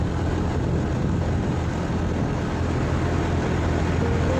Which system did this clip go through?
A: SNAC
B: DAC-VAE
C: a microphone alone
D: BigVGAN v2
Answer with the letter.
C